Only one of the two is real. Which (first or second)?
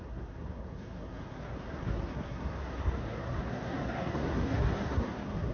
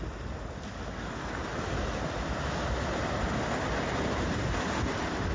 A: second